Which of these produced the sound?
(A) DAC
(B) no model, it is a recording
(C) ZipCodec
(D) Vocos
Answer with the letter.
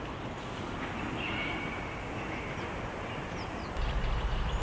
B